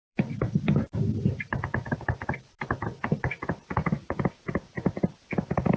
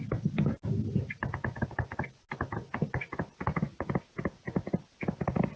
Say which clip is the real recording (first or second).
second